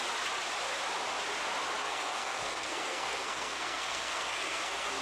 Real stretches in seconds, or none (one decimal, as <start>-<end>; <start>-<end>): 0.0-1.8